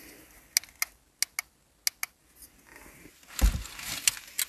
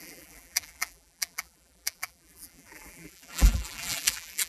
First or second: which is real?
first